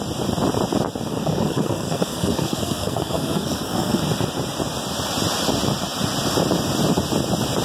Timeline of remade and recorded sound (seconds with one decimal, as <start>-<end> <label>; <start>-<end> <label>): 0.0-1.1 recorded; 1.1-4.0 remade; 4.0-7.6 recorded